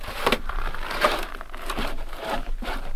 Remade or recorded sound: remade